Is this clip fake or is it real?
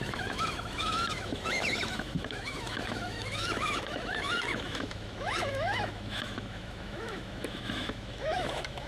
fake